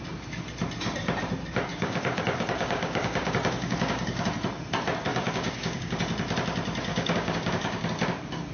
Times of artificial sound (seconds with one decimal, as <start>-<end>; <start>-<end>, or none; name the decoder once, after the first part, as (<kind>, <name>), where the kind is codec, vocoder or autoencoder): 1.7-4.3 (codec, DAC); 5.1-6.0; 6.9-7.8